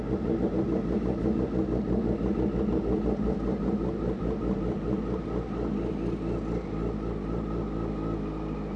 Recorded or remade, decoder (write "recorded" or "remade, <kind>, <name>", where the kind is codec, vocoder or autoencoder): recorded